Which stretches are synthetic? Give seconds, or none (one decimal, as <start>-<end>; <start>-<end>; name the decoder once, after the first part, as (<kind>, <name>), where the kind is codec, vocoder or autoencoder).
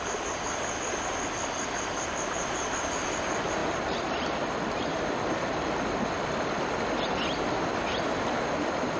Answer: none